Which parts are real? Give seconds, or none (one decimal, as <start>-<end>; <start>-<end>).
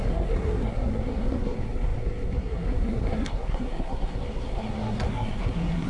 none